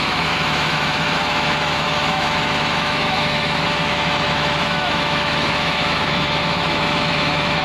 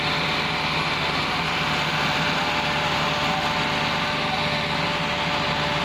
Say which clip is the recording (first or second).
second